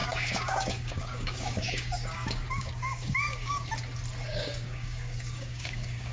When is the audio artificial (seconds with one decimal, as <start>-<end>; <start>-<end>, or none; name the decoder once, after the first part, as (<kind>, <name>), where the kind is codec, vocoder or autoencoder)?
0.0-3.7 (codec, DAC); 4.3-6.1